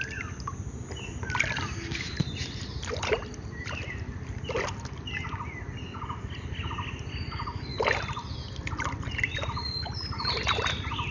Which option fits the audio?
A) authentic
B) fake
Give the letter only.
A